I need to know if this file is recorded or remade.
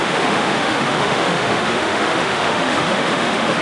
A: remade